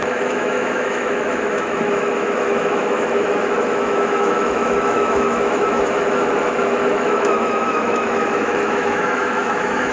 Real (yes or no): no